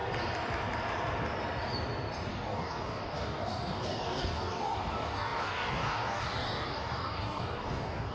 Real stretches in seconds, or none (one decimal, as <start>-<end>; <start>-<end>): 0.0-2.3

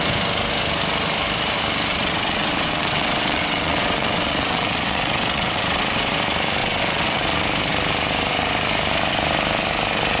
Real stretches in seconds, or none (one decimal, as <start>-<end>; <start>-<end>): 0.0-1.9; 6.1-6.6; 7.2-10.2

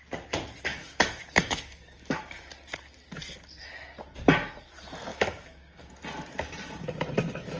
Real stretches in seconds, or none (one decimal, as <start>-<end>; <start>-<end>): 0.0-0.7; 2.5-5.1; 5.9-7.6

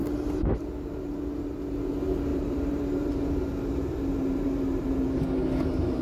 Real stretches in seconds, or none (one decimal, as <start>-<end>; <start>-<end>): 0.0-2.3; 5.2-6.0

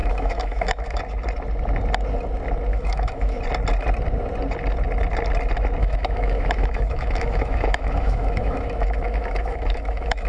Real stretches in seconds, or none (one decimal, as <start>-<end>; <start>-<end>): 1.0-2.7; 3.4-5.8

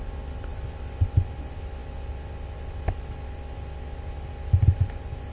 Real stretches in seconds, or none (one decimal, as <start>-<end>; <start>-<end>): 0.0-5.3